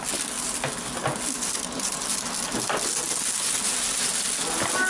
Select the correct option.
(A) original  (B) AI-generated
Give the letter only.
A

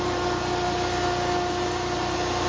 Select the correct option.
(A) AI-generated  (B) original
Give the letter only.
B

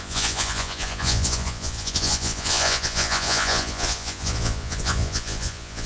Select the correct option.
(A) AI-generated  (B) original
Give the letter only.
A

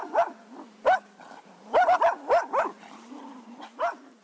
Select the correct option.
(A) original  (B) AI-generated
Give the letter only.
A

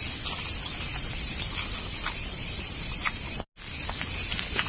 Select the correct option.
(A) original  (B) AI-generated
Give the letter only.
A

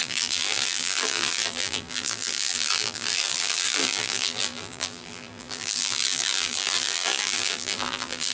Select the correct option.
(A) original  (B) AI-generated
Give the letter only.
B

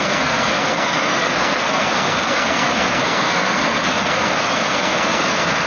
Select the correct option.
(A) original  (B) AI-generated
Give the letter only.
B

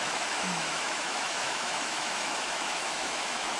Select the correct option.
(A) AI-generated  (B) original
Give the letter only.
A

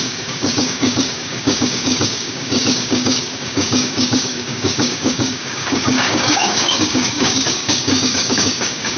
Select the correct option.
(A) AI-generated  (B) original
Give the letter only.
A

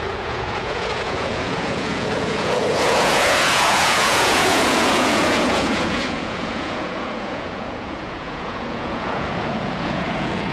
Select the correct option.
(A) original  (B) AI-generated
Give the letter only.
B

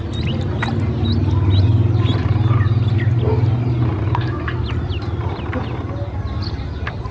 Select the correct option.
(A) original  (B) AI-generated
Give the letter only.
A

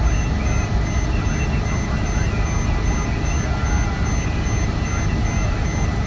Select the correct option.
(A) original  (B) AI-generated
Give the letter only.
A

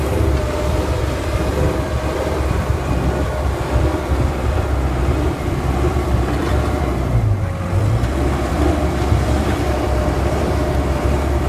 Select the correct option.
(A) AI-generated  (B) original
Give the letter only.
A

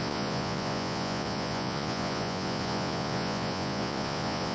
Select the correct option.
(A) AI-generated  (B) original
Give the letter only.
A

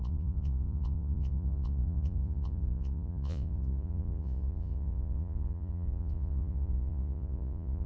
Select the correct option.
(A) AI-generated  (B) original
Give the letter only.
A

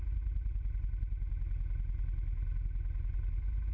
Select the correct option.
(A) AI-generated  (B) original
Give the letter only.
B